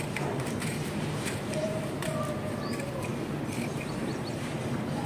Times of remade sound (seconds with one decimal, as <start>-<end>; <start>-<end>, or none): 0.0-3.1; 3.9-5.1